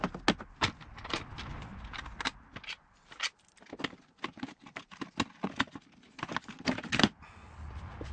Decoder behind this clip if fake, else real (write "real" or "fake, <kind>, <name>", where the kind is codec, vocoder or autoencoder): real